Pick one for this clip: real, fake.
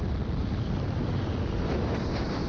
real